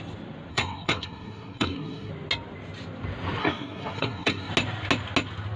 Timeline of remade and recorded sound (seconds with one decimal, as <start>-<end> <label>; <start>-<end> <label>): 0.0-0.5 recorded; 0.5-2.1 remade; 2.1-3.4 recorded; 3.4-4.5 remade; 4.5-5.6 recorded